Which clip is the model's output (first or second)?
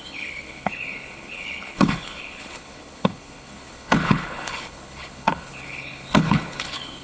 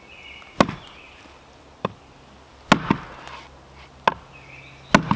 first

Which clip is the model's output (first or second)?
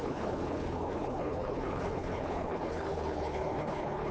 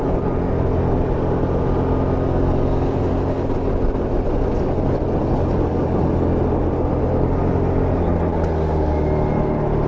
first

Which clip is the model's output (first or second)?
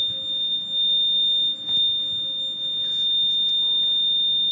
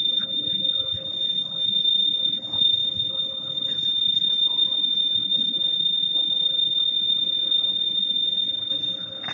second